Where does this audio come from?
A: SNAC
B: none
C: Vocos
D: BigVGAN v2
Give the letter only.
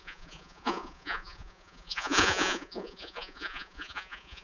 C